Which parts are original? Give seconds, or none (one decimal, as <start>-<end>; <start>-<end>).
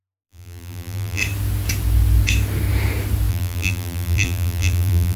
1.2-3.3